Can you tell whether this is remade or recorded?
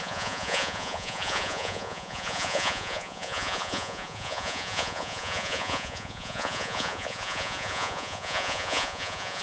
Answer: remade